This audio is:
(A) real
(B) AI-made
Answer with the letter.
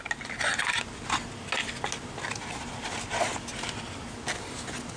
A